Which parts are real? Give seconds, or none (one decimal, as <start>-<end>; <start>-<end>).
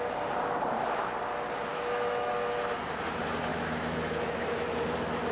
0.0-1.7; 2.3-3.5; 4.7-5.3